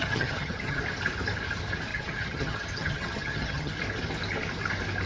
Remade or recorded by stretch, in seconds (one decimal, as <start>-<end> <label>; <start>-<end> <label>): 0.0-0.8 remade; 0.8-1.9 recorded; 1.9-3.7 remade; 3.7-5.1 recorded